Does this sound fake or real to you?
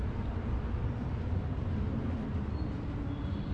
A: real